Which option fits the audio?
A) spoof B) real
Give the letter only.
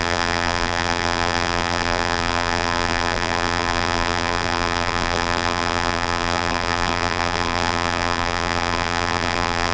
A